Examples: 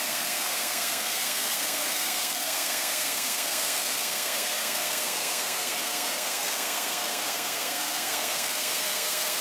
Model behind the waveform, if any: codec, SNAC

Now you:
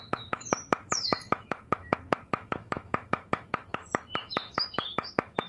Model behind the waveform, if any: autoencoder, DAC-VAE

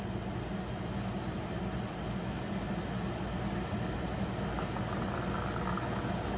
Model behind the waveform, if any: none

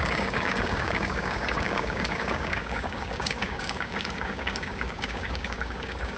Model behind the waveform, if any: codec, DAC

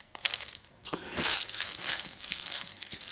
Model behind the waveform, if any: codec, SNAC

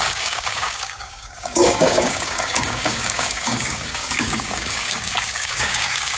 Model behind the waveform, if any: codec, DAC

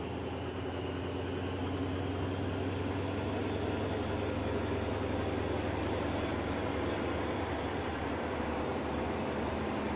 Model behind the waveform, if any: none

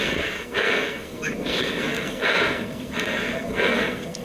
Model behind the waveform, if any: codec, SNAC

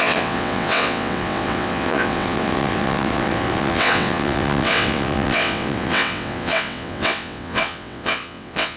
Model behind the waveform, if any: vocoder, WaveNeXt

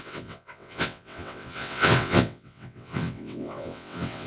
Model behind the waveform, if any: vocoder, WaveNeXt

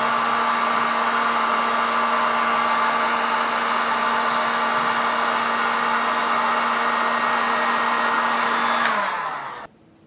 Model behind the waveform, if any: none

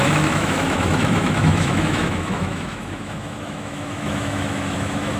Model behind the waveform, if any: autoencoder, DAC-VAE